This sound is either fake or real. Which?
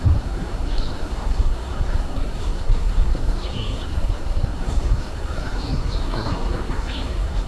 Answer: fake